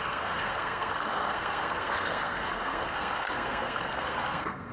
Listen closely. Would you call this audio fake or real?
fake